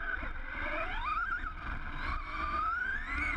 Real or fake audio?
real